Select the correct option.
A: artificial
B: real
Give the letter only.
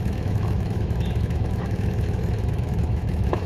A